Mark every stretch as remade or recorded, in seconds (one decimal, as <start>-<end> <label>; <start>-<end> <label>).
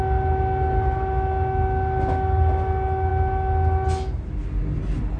0.0-5.2 recorded